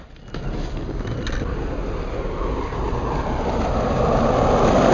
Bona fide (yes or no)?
yes